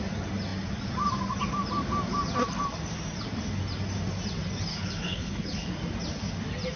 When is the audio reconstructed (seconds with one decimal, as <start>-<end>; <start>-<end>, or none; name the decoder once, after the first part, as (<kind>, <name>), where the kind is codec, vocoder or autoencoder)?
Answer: 4.7-5.7 (codec, HILCodec)